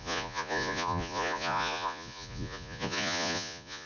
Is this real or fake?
fake